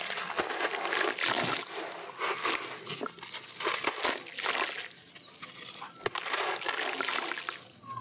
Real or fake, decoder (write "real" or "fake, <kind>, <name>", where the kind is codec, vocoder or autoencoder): real